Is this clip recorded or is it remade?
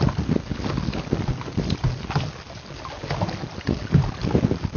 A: recorded